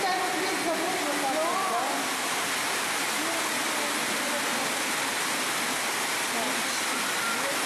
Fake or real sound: real